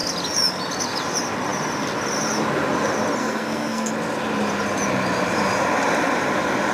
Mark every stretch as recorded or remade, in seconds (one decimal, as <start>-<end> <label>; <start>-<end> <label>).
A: 0.0-3.2 recorded; 3.2-3.9 remade; 3.9-6.7 recorded